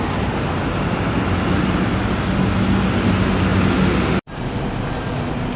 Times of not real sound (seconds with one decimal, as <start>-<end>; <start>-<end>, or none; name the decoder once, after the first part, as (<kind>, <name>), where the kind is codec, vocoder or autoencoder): none